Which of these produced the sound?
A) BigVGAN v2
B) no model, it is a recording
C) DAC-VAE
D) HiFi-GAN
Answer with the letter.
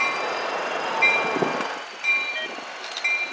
B